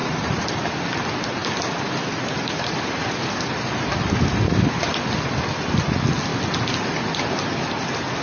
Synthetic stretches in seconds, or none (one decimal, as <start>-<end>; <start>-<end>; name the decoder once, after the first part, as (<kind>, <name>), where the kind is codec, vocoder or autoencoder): 0.0-0.8 (vocoder, BigVGAN v2); 3.9-4.9